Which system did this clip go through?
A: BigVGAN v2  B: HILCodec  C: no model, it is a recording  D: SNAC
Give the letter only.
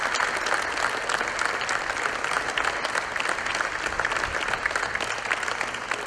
C